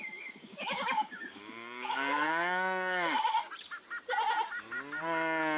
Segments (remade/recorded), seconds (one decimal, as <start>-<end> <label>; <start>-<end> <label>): 0.0-3.4 remade; 3.4-5.6 recorded